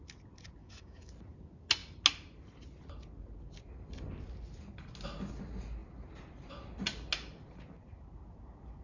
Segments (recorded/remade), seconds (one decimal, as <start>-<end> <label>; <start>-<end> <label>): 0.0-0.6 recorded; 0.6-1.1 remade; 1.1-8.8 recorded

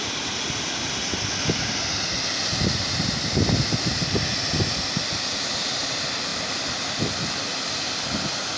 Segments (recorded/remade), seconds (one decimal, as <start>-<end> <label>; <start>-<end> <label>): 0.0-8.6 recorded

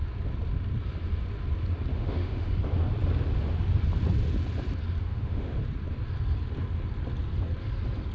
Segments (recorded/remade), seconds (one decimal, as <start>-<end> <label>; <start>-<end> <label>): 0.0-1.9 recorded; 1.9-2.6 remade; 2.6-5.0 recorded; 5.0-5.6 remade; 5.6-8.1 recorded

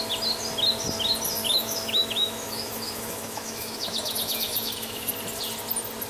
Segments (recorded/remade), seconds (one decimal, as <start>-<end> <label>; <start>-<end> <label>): 0.0-1.4 recorded; 1.4-5.1 remade; 5.1-6.1 recorded

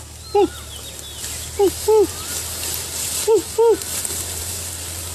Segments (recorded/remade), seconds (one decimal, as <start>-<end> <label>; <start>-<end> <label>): 0.0-5.1 recorded